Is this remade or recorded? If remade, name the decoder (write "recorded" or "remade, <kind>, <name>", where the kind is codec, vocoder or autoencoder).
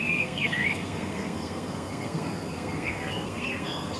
remade, codec, SNAC